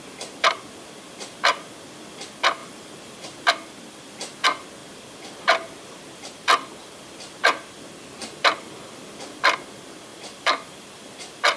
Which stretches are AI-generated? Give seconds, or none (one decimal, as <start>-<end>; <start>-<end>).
4.8-6.7; 8.2-9.2; 10.1-11.1